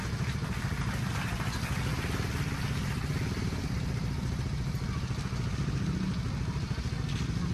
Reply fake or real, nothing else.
real